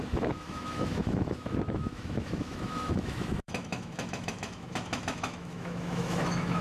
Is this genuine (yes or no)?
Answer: no